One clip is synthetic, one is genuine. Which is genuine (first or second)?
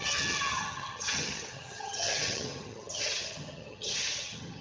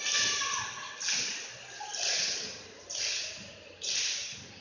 second